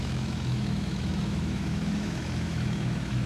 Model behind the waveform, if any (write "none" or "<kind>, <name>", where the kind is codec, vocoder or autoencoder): autoencoder, DAC-VAE